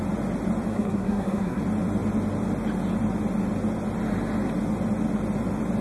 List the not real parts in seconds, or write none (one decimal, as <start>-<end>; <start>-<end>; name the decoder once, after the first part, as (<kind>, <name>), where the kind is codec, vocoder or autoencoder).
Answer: 0.7-1.6 (codec, SNAC)